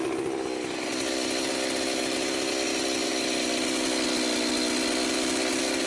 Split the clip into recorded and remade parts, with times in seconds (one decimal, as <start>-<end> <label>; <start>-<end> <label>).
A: 0.0-5.9 recorded